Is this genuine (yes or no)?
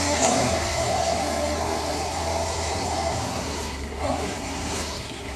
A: no